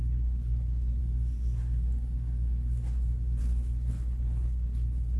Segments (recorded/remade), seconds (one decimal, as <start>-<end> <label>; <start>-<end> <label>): 0.0-1.0 remade; 1.0-3.4 recorded; 3.4-5.2 remade